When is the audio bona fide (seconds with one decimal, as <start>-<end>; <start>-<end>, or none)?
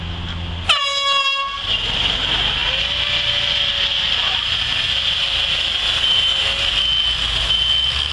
0.0-8.1